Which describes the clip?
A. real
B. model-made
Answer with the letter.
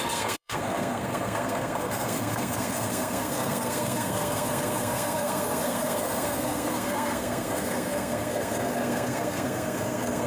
B